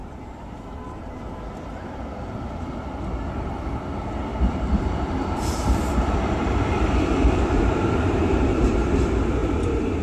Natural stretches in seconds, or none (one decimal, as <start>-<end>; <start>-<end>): 1.2-4.3; 8.7-10.0